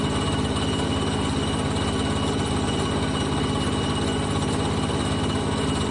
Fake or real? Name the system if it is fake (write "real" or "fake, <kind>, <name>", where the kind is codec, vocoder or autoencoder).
real